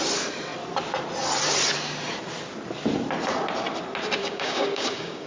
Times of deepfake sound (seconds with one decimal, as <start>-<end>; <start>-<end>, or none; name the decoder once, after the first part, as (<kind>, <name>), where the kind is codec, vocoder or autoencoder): 4.2-5.3 (codec, DAC)